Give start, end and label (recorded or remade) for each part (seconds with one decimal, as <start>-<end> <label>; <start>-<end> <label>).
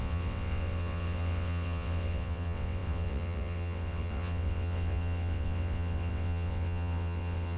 0.0-7.6 remade